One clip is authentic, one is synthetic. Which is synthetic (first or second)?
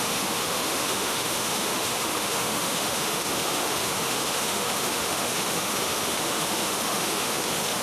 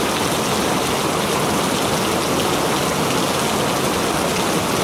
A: first